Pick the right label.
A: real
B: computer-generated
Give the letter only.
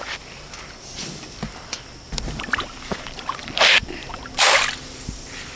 B